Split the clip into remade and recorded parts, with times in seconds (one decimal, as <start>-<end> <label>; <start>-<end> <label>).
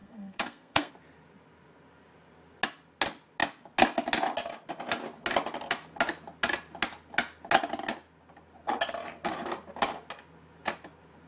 0.0-0.9 remade; 0.9-11.3 recorded